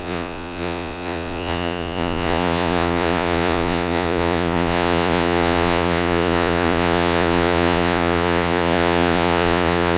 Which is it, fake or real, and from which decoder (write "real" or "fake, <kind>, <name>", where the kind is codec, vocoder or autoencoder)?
fake, vocoder, Vocos